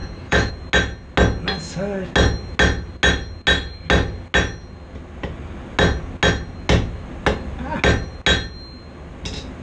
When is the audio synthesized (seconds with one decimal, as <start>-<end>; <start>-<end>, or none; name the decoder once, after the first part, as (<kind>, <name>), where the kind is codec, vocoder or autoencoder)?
0.0-0.5 (autoencoder, DAC-VAE)